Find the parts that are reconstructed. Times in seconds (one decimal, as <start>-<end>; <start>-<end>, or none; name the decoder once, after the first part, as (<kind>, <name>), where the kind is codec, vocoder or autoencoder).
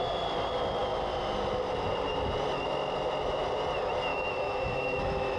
4.1-5.4 (autoencoder, DAC-VAE)